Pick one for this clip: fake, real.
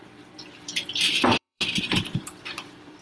fake